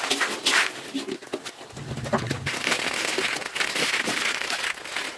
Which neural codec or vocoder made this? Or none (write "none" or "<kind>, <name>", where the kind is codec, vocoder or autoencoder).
none